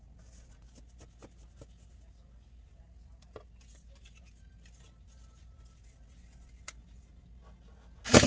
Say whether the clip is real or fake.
real